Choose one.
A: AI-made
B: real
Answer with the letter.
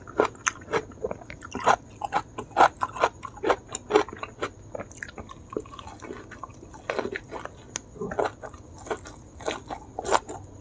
B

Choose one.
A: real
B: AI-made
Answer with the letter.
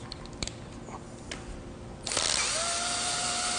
A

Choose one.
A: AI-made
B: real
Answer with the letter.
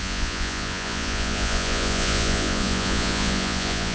A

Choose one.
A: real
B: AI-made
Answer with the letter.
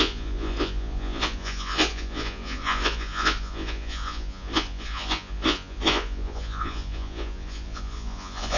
B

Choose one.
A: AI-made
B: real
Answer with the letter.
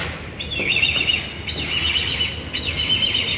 B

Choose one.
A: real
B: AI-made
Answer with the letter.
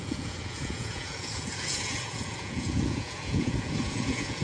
B